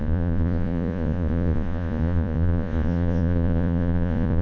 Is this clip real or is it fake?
fake